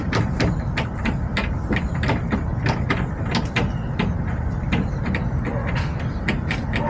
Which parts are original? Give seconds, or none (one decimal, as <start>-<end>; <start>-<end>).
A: 0.0-6.9